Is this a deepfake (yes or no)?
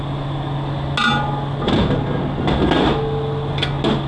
no